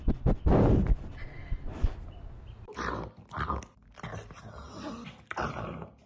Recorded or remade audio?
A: recorded